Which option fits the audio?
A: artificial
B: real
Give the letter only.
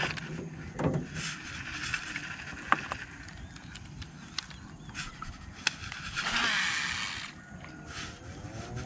B